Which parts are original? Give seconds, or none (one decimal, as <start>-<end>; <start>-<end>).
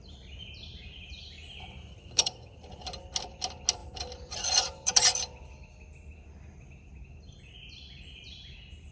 0.0-1.9; 2.6-8.9